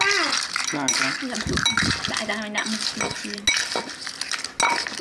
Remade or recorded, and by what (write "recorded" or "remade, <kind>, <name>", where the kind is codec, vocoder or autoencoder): recorded